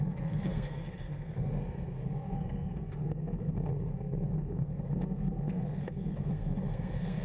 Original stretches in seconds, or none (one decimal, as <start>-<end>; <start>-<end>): none